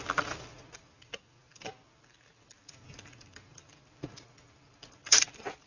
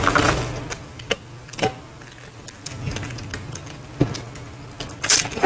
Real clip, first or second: second